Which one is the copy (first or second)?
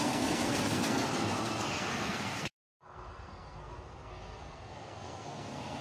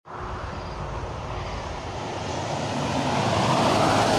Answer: first